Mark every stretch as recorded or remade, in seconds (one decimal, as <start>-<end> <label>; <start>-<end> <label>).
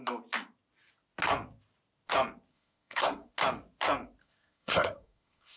0.0-2.5 recorded; 2.5-3.3 remade; 3.3-4.2 recorded; 4.2-5.6 remade